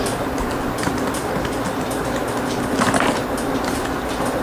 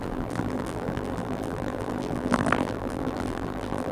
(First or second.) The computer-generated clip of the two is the second